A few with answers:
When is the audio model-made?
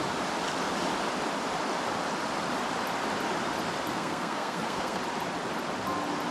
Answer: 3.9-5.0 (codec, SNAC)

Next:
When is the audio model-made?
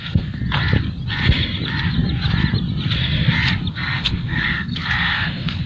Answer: 0.0-0.4 (codec, SNAC); 3.7-5.7